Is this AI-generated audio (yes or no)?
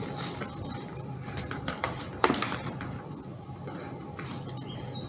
yes